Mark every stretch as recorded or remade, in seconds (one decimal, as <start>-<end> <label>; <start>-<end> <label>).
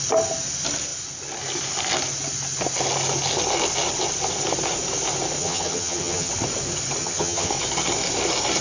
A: 0.0-5.4 recorded; 5.4-6.3 remade; 6.3-7.0 recorded; 7.0-7.5 remade; 7.5-8.6 recorded